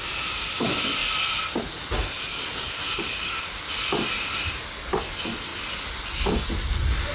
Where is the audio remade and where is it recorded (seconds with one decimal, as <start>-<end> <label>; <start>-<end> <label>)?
0.0-7.1 recorded